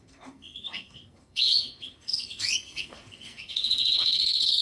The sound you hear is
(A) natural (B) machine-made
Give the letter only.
B